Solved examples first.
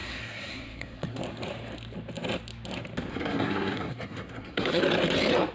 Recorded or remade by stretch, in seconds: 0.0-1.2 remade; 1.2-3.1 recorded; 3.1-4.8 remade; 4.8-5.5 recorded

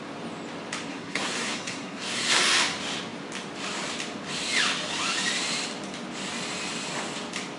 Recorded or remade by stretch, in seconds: 0.0-0.9 recorded; 0.9-2.4 remade; 2.4-7.6 recorded

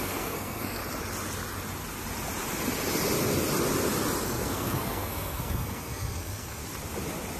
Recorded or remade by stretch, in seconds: 0.0-0.8 remade; 0.8-4.2 recorded; 4.2-6.6 remade; 6.6-7.4 recorded